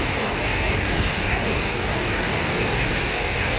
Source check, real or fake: fake